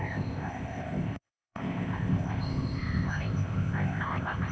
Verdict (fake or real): fake